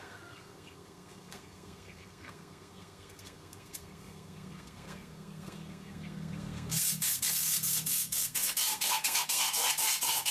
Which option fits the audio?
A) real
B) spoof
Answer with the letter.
B